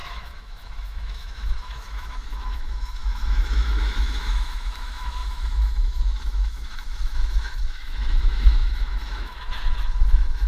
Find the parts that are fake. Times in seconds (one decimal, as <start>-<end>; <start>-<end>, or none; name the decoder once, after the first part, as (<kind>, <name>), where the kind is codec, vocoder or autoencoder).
0.0-10.5 (autoencoder, DAC-VAE)